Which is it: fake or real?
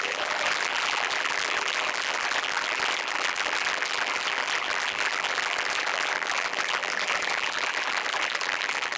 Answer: fake